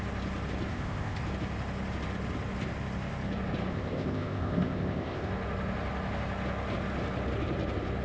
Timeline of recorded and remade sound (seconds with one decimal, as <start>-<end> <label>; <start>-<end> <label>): 0.0-0.7 recorded; 0.7-1.2 remade; 1.2-3.7 recorded; 3.7-5.3 remade; 5.3-8.0 recorded